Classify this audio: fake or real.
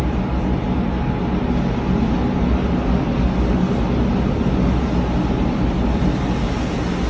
real